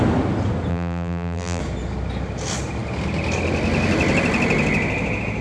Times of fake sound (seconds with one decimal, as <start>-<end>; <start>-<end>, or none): 0.7-1.6